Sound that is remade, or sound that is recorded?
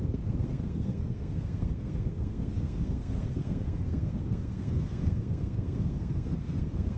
remade